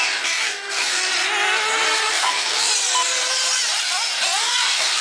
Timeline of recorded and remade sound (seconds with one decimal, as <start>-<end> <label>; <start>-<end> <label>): 0.0-1.1 remade; 1.1-2.1 recorded; 2.1-2.7 remade; 2.7-4.4 recorded; 4.4-5.0 remade